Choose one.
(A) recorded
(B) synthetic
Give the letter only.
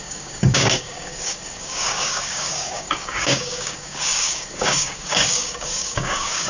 B